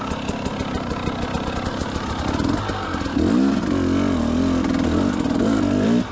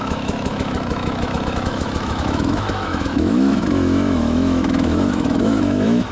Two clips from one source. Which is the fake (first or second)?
second